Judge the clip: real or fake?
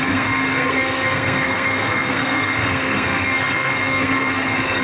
fake